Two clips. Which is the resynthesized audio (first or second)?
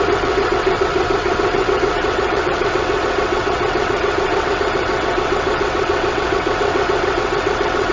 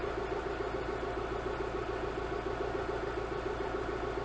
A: first